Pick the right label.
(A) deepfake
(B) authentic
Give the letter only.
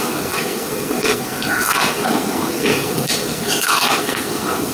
A